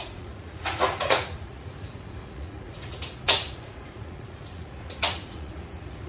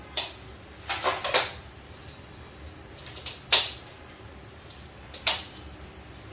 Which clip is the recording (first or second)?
second